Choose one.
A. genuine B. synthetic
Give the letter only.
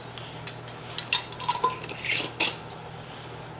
A